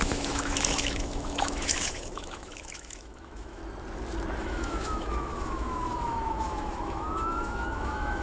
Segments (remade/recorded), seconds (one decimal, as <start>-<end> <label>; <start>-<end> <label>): 0.0-3.6 remade; 3.6-4.4 recorded; 4.4-8.2 remade